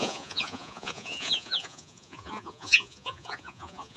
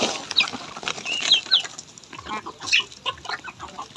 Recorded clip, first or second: second